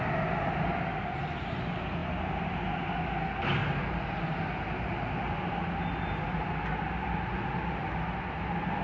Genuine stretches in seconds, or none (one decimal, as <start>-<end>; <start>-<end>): 0.0-8.8